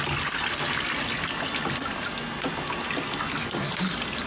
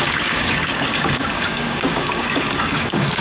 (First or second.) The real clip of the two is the first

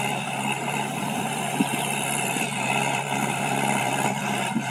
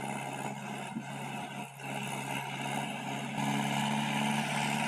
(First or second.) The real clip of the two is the second